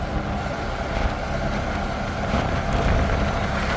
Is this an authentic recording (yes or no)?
yes